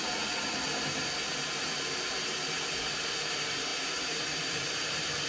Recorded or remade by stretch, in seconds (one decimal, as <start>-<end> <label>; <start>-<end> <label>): 0.0-5.3 recorded